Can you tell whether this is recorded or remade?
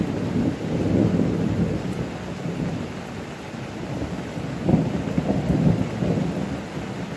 recorded